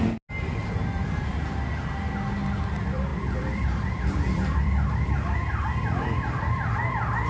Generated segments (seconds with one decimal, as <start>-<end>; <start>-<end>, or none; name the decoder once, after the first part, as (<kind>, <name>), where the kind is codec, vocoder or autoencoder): 3.1-7.3 (vocoder, BigVGAN v2)